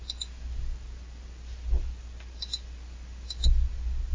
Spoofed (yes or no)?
no